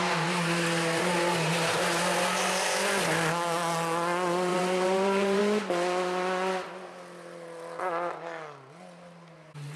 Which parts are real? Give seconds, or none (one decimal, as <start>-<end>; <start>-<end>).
0.0-4.5; 5.4-9.8

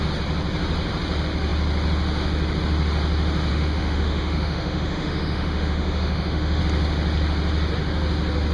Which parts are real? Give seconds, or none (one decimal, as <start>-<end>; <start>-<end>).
0.0-3.5; 6.6-8.5

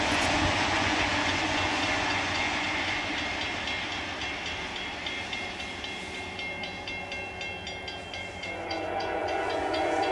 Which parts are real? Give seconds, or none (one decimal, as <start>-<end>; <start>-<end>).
3.1-8.1

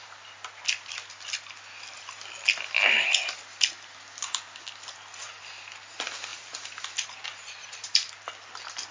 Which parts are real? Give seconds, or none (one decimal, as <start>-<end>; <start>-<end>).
0.0-6.3; 8.1-8.9

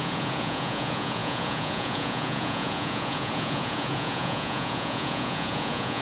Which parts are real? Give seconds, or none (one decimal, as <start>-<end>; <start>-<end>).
none

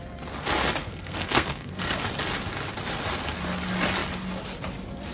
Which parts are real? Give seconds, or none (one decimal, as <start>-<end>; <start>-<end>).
0.0-0.8; 2.0-5.1

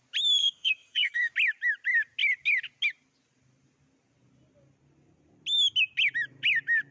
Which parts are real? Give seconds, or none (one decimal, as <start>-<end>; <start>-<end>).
0.0-0.4; 1.3-6.9

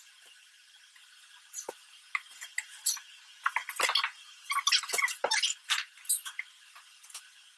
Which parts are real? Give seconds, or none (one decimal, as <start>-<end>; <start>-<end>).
0.0-7.6